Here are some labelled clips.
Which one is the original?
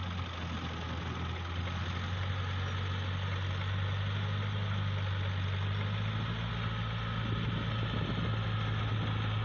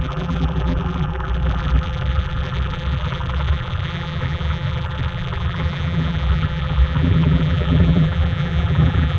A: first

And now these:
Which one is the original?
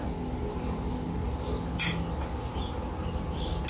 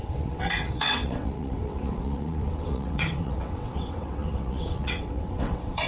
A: first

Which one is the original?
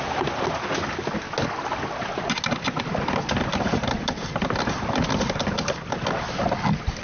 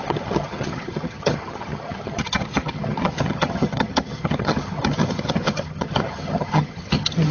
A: first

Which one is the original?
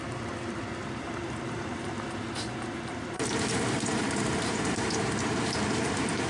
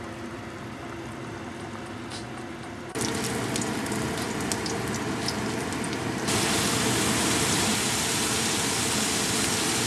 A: second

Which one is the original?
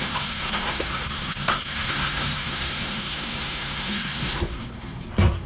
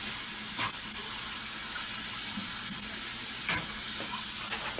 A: second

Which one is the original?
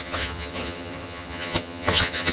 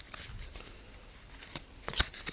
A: second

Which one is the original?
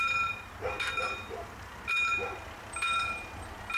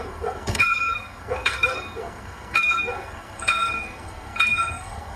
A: first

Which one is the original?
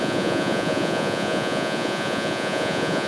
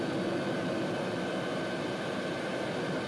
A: second